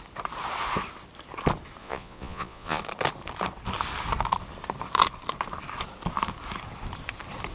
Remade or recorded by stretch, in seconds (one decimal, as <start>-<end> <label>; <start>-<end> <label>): 0.0-1.8 recorded; 1.8-2.8 remade; 2.8-7.5 recorded